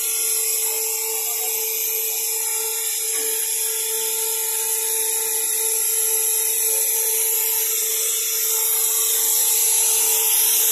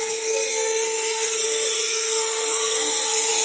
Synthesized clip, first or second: second